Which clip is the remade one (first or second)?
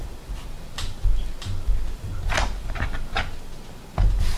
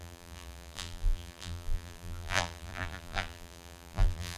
second